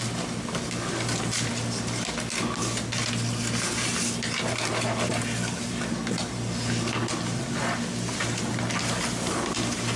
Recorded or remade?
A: recorded